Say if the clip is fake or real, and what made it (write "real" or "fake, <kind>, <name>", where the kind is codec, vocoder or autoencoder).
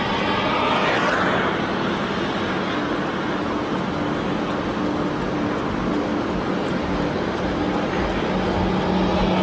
real